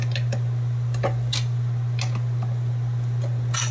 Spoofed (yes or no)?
no